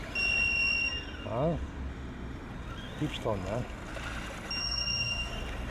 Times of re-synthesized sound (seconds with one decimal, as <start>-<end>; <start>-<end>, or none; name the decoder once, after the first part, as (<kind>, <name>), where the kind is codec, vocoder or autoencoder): 1.9-2.5 (autoencoder, DAC-VAE); 4.6-5.3